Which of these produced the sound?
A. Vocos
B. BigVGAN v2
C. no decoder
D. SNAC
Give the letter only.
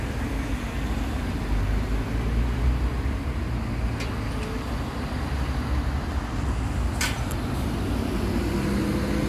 C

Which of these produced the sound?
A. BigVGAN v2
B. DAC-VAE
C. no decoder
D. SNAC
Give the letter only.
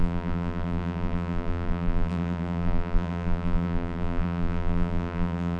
A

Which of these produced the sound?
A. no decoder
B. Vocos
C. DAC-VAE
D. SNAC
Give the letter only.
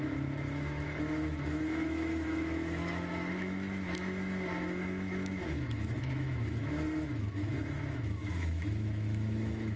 C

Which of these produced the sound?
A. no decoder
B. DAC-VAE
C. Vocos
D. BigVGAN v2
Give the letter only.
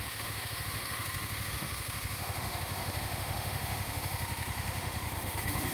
B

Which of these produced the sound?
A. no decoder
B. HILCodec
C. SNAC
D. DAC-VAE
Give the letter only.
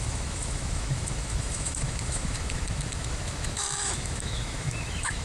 D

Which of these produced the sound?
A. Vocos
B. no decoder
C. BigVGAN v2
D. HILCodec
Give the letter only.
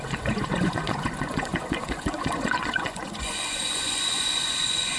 A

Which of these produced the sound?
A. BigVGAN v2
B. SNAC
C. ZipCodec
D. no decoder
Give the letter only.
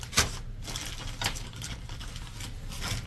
D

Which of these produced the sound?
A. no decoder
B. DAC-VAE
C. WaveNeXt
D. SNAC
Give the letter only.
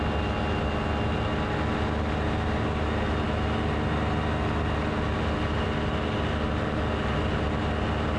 A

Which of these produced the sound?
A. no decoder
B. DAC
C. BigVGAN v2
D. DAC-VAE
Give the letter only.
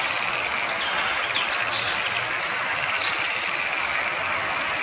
A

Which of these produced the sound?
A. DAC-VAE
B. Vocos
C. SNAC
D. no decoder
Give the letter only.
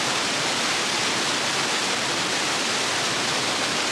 D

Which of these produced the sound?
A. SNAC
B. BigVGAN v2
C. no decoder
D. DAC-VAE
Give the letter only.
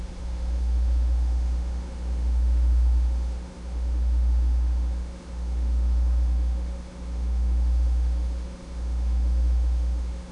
D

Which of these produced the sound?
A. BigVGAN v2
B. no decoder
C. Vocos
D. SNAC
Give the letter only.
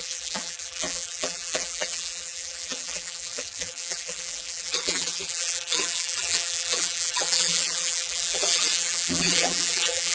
A